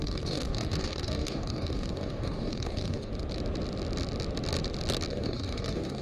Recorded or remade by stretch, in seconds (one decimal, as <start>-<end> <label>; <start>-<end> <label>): 0.0-3.1 remade; 3.1-5.1 recorded; 5.1-6.0 remade

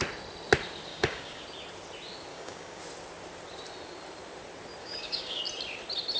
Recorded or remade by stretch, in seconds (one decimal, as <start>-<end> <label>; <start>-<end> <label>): 0.0-0.9 recorded; 0.9-1.4 remade; 1.4-2.3 recorded; 2.3-2.8 remade; 2.8-4.8 recorded; 4.8-5.4 remade; 5.4-6.2 recorded

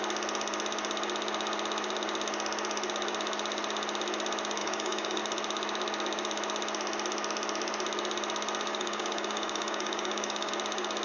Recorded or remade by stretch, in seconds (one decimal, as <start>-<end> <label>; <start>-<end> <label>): 0.0-4.6 recorded; 4.6-5.2 remade; 5.2-8.7 recorded; 8.7-10.5 remade; 10.5-11.0 recorded

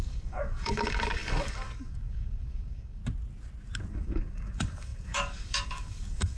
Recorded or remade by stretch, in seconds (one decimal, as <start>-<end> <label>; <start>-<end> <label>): 0.0-3.0 remade; 3.0-3.9 recorded; 3.9-6.4 remade

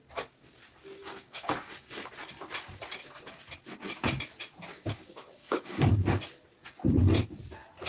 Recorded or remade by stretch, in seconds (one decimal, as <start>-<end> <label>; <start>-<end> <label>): 0.0-1.0 recorded; 1.0-2.1 remade; 2.1-4.7 recorded; 4.7-5.9 remade; 5.9-7.9 recorded

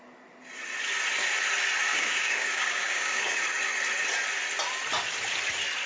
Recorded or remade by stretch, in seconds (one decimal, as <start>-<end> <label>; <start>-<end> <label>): 0.0-1.9 recorded; 1.9-3.4 remade; 3.4-5.9 recorded